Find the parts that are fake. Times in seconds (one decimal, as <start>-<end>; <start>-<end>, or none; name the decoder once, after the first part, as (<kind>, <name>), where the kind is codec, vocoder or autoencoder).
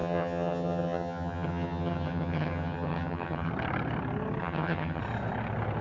0.0-3.5 (vocoder, HiFi-GAN); 4.4-5.0